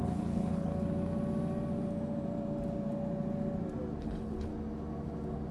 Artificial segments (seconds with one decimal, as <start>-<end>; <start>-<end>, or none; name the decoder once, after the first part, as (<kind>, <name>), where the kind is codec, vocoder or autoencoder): 0.0-0.7 (codec, HILCodec); 4.0-4.5